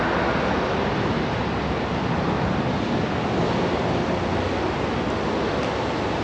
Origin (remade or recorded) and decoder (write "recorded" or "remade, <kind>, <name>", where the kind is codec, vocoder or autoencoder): recorded